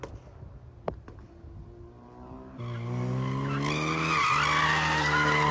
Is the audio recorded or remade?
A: recorded